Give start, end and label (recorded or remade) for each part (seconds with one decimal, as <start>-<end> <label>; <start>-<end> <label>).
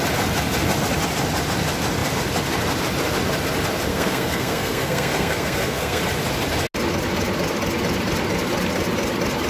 0.0-3.9 recorded; 3.9-6.0 remade; 6.0-9.5 recorded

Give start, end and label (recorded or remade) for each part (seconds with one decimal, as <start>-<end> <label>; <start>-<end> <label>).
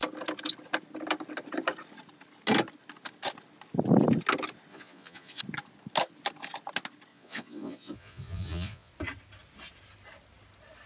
0.0-4.7 recorded; 4.7-5.4 remade; 5.4-7.1 recorded; 7.1-8.9 remade; 8.9-10.9 recorded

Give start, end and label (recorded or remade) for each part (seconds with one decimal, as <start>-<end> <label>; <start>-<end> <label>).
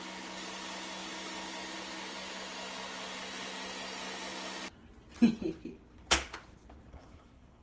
0.0-6.9 recorded; 6.9-7.6 remade